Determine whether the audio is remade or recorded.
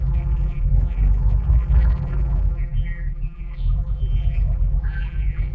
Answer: remade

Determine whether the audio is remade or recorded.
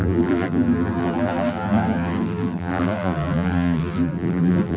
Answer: remade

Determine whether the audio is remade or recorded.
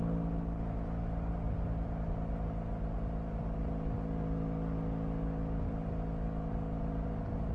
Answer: recorded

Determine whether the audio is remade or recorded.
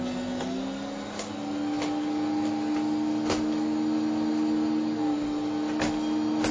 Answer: recorded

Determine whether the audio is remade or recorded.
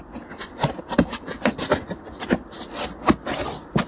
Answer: recorded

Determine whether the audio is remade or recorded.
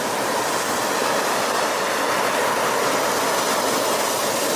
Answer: recorded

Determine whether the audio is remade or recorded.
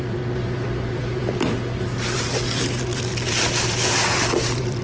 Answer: remade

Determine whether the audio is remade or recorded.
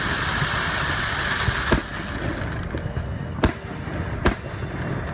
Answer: recorded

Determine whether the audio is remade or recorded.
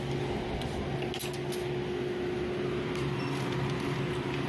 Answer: recorded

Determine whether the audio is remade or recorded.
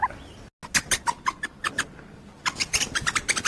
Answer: recorded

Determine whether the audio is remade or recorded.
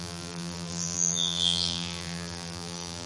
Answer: remade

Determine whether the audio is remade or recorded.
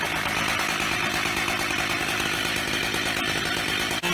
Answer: recorded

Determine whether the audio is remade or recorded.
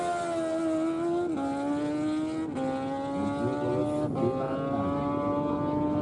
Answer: recorded